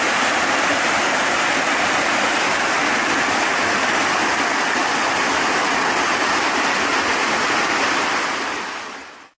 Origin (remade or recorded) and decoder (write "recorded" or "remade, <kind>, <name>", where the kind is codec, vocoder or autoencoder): recorded